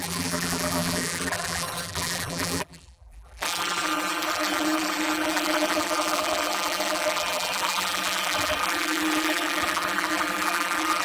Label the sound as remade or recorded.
remade